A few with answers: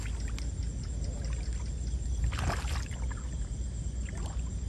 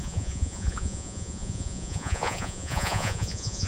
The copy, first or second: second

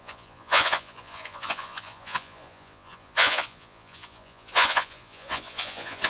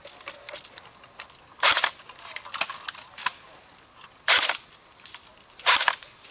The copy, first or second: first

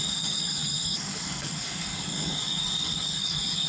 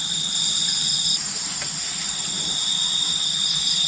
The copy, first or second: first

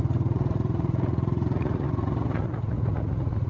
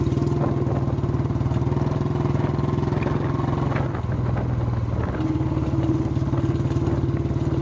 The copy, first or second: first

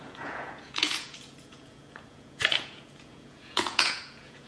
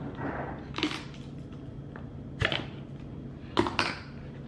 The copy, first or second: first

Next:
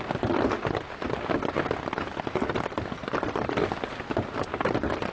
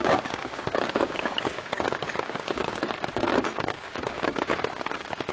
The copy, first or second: second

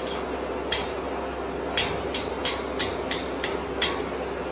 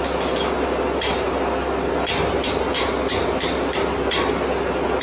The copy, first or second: second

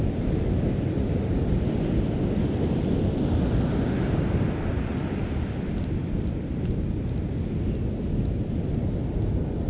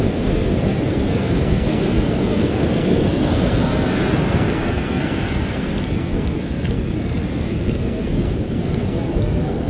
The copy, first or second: second